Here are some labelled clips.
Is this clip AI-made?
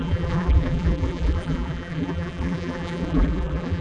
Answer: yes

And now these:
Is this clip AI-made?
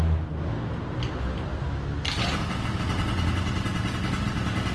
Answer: no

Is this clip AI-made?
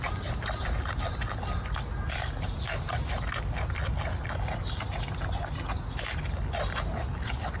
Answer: no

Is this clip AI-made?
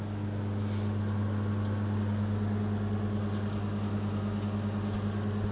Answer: no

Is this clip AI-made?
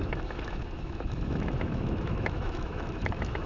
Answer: yes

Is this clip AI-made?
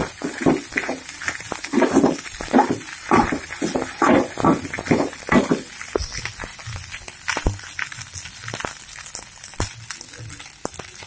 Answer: no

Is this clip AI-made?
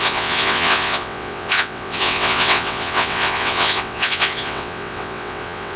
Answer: yes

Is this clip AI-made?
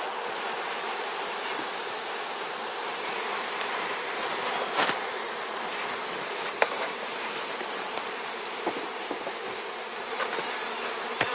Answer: yes